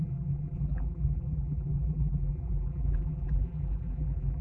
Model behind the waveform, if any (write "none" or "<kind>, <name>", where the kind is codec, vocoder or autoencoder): vocoder, BigVGAN v2